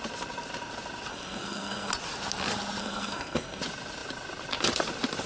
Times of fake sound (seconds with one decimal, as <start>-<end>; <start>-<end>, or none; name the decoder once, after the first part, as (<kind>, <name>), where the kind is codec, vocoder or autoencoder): 1.1-1.9 (codec, SNAC); 2.8-3.6